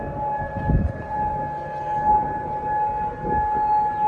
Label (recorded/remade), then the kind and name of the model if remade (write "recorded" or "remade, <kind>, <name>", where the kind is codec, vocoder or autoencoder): recorded